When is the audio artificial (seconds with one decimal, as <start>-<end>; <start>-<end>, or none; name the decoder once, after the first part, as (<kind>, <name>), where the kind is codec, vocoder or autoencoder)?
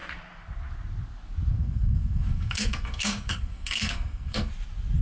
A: 1.5-4.5 (codec, SNAC)